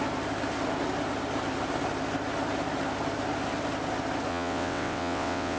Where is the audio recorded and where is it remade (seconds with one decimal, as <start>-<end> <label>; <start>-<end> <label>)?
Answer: 0.0-4.3 recorded; 4.3-5.6 remade